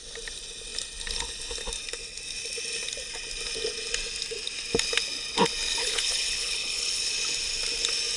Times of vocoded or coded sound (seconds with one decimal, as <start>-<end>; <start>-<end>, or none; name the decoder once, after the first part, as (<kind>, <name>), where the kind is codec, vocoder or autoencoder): 5.8-7.1 (codec, HILCodec)